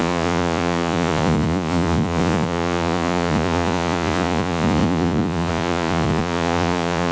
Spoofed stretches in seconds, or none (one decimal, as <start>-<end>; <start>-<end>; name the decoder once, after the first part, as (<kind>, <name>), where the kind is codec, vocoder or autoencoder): 0.0-7.1 (vocoder, Vocos)